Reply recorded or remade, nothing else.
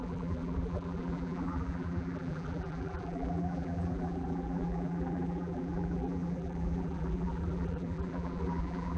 remade